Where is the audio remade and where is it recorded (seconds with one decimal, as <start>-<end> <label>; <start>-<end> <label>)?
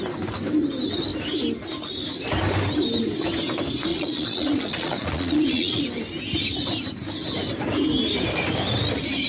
0.0-3.9 recorded; 3.9-5.8 remade; 5.8-9.3 recorded